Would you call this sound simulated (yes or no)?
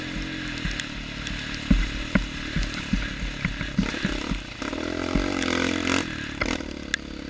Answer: no